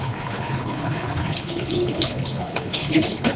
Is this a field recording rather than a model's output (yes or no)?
no